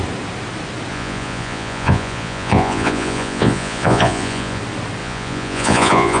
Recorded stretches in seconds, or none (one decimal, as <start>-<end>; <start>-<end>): 0.0-0.9; 4.6-5.0